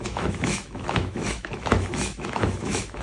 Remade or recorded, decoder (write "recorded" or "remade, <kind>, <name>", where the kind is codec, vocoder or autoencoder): remade, autoencoder, DAC-VAE